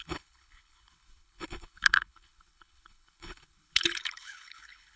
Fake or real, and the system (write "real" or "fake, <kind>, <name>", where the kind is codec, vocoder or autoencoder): fake, codec, HILCodec